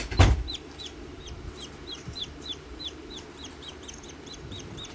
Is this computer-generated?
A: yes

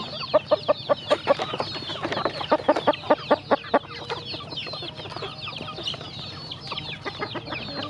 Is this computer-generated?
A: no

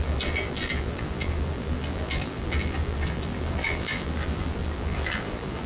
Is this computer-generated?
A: yes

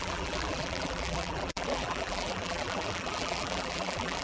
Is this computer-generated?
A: yes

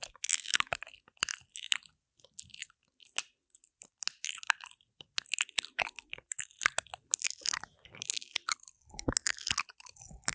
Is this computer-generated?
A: no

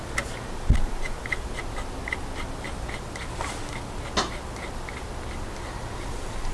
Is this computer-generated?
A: no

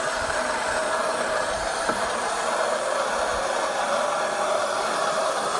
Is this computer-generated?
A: no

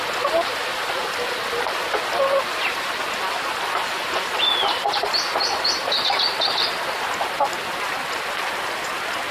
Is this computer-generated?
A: yes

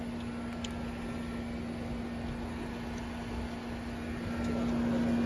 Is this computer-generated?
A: no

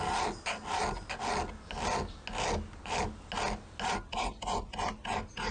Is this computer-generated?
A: no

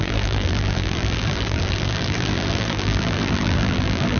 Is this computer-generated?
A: yes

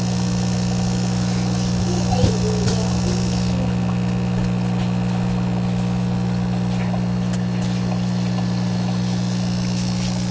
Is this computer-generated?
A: no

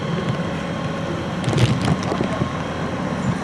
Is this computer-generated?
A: no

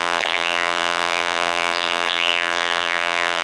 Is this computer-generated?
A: yes